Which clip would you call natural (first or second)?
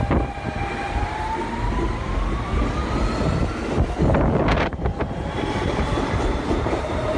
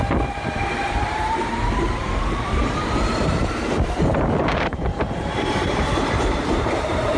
first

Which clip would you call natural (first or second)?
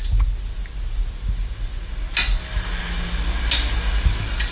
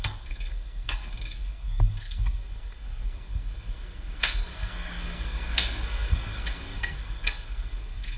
first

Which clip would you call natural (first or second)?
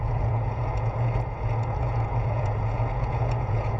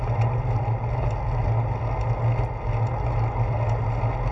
second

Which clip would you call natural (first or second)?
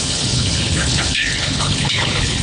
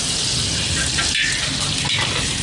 second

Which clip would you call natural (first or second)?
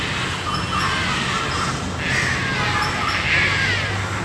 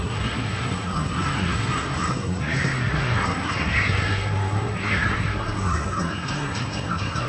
first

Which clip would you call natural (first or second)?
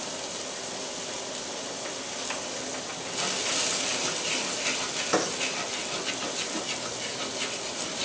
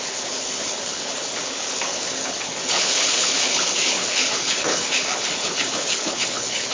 first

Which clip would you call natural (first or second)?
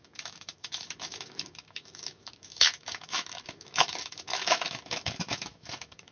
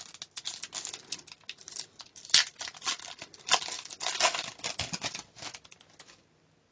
second